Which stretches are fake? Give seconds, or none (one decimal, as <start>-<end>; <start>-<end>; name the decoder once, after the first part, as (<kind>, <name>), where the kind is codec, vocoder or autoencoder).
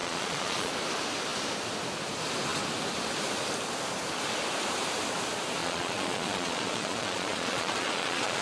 0.0-0.7 (vocoder, Vocos); 5.6-8.4